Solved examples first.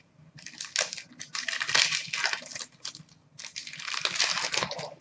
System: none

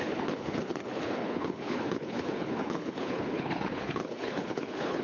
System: codec, HILCodec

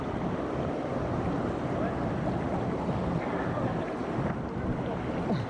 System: none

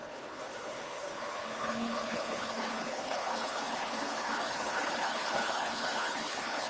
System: codec, HILCodec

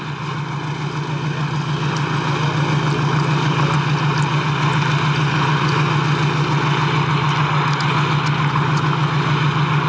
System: none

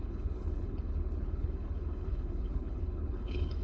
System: codec, HILCodec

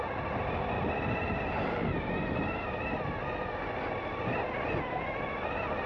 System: none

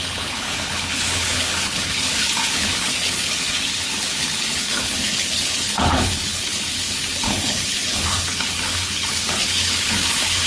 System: codec, HILCodec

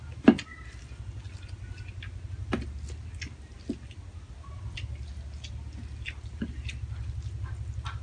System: none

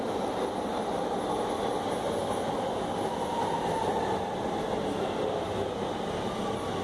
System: none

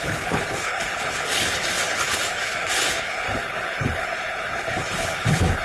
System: codec, HILCodec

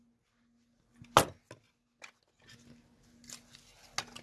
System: none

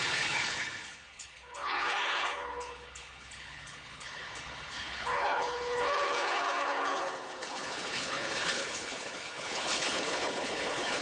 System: codec, HILCodec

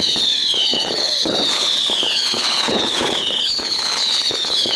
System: codec, HILCodec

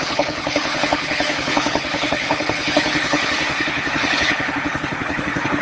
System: codec, HILCodec